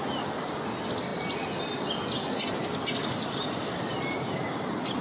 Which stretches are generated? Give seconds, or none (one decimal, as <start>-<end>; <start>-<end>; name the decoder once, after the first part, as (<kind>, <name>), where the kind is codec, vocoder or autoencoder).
none